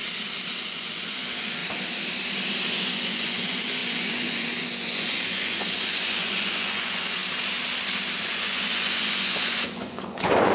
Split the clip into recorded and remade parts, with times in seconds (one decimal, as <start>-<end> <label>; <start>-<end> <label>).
0.0-0.6 recorded; 0.6-1.6 remade; 1.6-2.7 recorded; 2.7-7.2 remade; 7.2-8.2 recorded; 8.2-10.5 remade